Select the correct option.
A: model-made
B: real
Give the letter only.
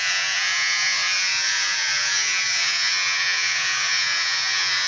A